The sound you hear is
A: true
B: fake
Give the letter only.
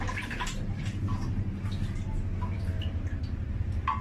B